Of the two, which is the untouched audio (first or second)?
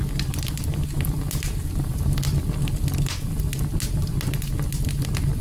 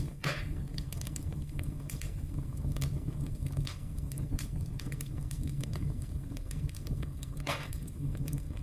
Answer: first